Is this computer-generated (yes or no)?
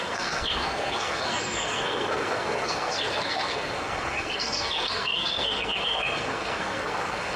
yes